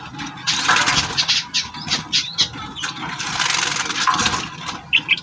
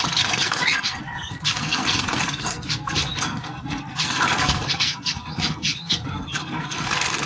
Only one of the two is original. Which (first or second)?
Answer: first